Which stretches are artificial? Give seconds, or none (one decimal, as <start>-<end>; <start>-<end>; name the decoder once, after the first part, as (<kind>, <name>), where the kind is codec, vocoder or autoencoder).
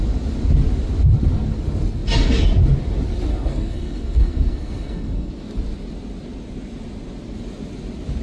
3.3-5.3 (codec, SNAC)